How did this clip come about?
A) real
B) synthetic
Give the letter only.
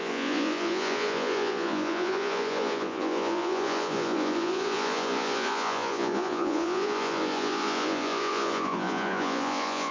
B